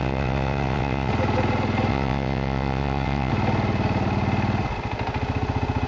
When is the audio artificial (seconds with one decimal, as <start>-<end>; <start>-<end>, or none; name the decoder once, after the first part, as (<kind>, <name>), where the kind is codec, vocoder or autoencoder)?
0.0-1.1 (vocoder, WaveNeXt); 1.9-3.3